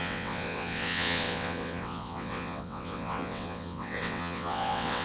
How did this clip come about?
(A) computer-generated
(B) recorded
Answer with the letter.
A